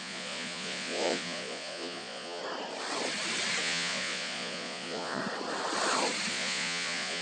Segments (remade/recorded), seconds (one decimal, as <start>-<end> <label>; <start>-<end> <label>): 0.0-2.4 remade; 2.4-3.6 recorded; 3.6-5.2 remade; 5.2-6.3 recorded; 6.3-7.2 remade

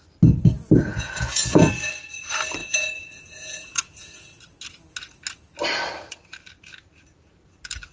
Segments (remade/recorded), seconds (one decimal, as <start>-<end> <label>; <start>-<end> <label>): 0.0-0.9 recorded; 0.9-1.7 remade; 1.7-2.6 recorded; 2.6-4.4 remade; 4.4-7.9 recorded

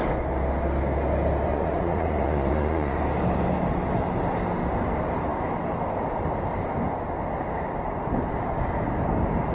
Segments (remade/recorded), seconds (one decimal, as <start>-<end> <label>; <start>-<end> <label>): 0.0-1.5 recorded; 1.5-3.0 remade; 3.0-9.5 recorded